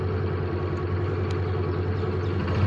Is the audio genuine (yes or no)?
yes